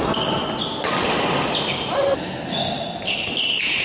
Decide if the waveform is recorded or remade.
recorded